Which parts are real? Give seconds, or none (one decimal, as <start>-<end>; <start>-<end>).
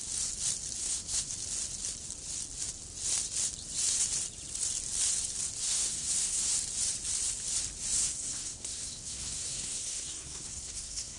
0.0-0.8; 1.3-5.6; 6.5-8.0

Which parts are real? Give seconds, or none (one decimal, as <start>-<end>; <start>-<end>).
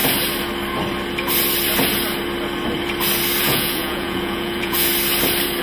0.0-3.4; 4.9-5.6